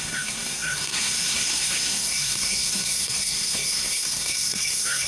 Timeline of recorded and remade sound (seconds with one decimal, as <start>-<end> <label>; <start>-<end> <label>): 0.0-5.1 remade